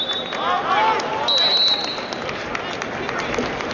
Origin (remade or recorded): recorded